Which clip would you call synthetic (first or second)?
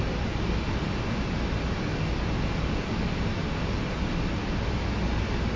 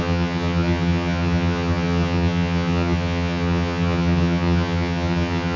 second